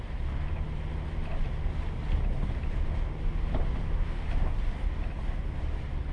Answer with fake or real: real